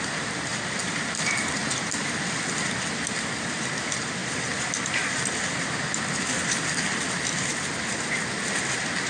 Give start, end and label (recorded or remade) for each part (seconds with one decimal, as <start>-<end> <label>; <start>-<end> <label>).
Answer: 0.0-9.1 recorded